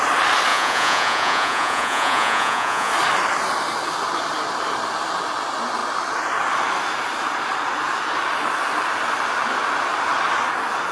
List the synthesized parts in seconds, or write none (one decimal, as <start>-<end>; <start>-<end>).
0.5-2.9